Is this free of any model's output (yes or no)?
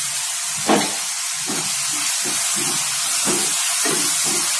yes